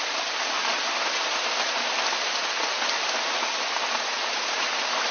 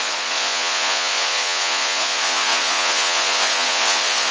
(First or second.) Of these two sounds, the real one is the first